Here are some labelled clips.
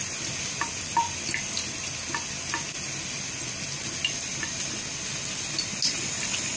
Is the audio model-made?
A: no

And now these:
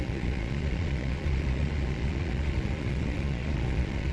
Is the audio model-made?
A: yes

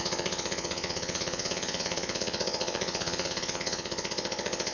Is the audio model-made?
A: yes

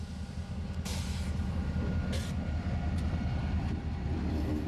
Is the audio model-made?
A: no